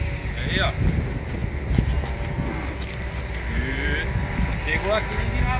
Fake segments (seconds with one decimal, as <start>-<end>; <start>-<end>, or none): none